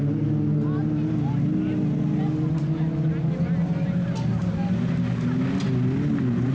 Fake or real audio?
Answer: real